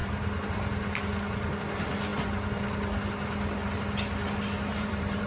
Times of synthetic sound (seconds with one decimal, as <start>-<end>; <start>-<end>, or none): 4.7-5.3